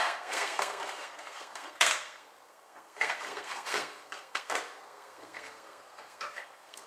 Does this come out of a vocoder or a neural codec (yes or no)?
yes